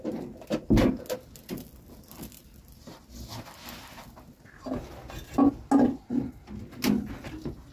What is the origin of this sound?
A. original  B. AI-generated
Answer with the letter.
A